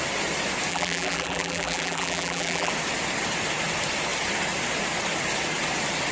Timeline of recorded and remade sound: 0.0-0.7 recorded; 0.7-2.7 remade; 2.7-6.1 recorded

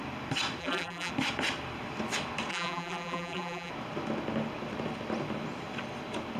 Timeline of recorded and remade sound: 0.0-0.6 recorded; 0.6-1.1 remade; 1.1-2.5 recorded; 2.5-3.7 remade; 3.7-6.4 recorded

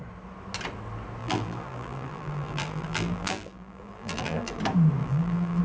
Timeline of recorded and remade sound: 0.0-1.2 recorded; 1.2-4.6 remade; 4.6-5.0 recorded; 5.0-5.6 remade

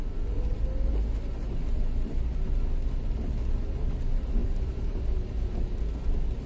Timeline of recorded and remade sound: 0.0-6.5 recorded

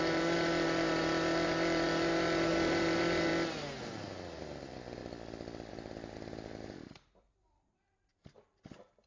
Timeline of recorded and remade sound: 0.0-3.3 remade; 3.3-3.8 recorded; 3.8-5.0 remade; 5.0-5.7 recorded; 5.7-9.1 remade

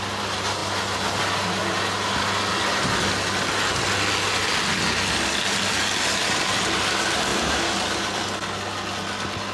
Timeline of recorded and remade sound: 0.0-7.3 recorded; 7.3-8.1 remade; 8.1-9.5 recorded

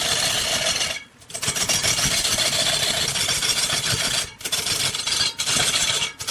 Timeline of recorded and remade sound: 0.0-6.3 recorded